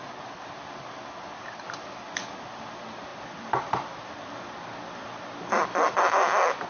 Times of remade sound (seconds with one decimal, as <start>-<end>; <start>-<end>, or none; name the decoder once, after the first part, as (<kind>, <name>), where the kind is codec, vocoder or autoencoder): none